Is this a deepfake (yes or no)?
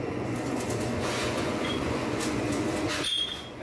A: yes